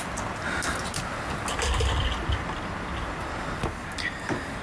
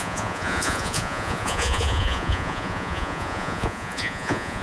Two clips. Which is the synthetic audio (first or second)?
second